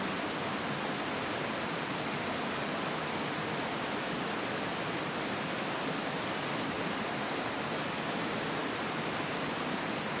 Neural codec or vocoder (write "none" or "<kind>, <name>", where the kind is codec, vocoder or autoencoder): none